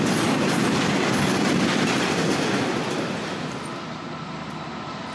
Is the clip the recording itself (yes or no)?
yes